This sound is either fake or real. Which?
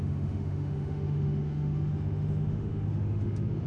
fake